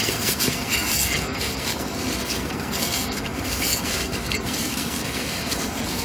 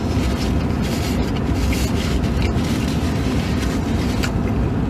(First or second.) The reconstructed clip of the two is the first